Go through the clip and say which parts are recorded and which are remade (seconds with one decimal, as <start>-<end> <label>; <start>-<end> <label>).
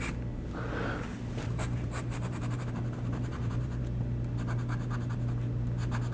0.0-1.5 recorded; 1.5-3.8 remade; 3.8-6.1 recorded